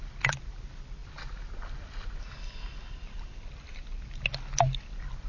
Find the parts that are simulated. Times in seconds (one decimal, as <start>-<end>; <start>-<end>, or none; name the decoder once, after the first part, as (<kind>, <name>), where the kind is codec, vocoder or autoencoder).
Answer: none